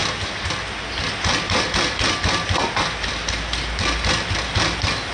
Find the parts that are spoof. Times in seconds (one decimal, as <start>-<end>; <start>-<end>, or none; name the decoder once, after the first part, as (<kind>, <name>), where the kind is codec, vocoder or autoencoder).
none